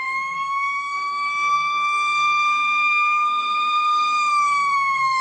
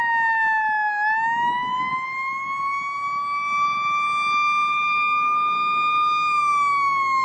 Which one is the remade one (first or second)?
first